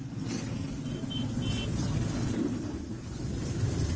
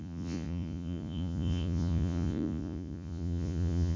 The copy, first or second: second